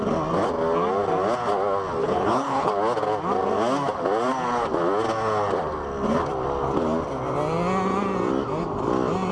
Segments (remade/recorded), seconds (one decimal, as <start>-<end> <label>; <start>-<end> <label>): 0.0-2.0 recorded; 2.0-2.7 remade; 2.7-9.3 recorded